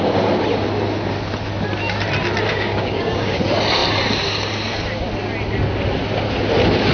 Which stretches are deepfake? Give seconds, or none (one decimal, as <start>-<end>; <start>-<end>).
2.5-3.4